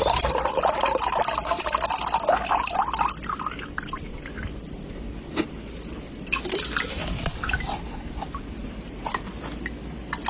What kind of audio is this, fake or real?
real